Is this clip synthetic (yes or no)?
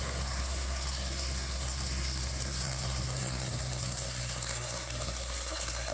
yes